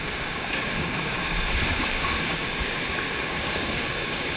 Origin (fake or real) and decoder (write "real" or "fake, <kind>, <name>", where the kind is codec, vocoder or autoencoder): fake, codec, DAC